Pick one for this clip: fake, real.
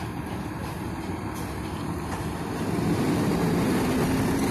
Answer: real